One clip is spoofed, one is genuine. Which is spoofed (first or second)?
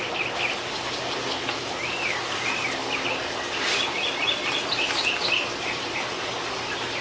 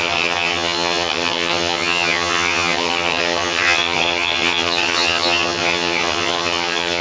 second